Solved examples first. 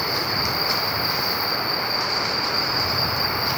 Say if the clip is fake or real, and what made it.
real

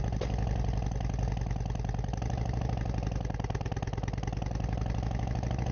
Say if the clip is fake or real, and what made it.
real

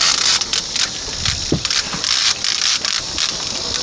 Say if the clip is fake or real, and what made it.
real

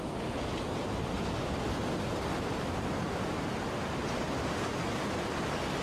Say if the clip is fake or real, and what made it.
real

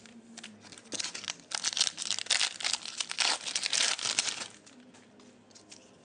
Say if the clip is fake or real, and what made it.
real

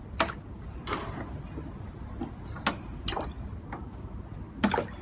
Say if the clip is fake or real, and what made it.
real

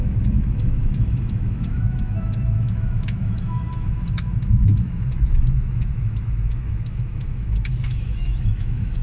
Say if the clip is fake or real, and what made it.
fake, autoencoder, DAC-VAE